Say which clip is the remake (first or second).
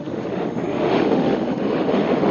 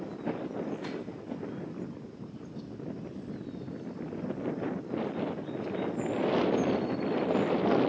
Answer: first